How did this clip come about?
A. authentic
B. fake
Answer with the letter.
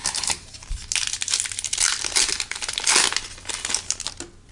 A